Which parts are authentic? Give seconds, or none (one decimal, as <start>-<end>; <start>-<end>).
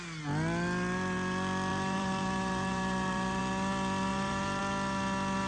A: 0.0-1.7; 3.4-4.1; 4.6-5.5